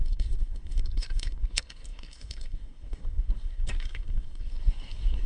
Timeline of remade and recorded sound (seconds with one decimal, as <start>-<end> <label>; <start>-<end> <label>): 0.0-5.3 remade